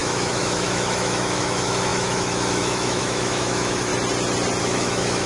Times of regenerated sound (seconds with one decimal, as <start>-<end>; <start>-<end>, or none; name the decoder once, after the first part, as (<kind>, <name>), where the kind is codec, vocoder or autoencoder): 0.0-3.9 (autoencoder, DAC-VAE); 4.6-5.3